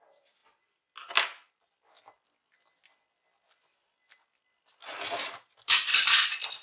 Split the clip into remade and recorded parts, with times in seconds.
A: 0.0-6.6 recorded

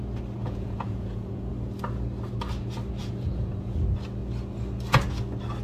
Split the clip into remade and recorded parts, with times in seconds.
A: 0.0-0.4 recorded; 0.4-1.5 remade; 1.5-3.0 recorded; 3.0-3.8 remade; 3.8-5.6 recorded